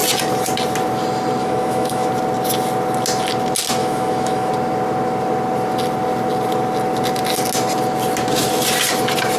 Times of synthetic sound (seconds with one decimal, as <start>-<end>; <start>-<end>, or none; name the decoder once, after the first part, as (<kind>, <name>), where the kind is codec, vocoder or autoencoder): 1.4-2.1 (autoencoder, DAC-VAE); 3.8-4.5